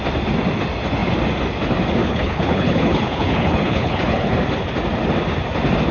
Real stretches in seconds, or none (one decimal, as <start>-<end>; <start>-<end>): 0.0-2.0; 4.4-5.9